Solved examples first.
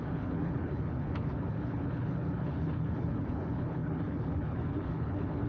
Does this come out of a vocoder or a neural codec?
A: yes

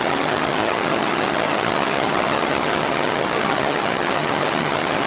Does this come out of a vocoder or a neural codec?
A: yes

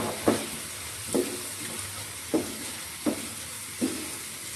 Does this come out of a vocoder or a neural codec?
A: no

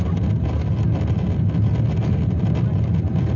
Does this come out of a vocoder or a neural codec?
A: no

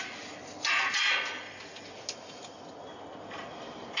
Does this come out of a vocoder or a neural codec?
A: no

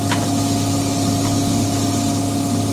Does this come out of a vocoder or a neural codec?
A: no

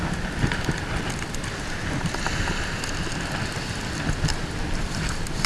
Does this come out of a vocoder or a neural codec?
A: no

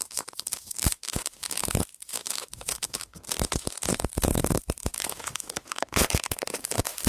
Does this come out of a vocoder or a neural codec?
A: yes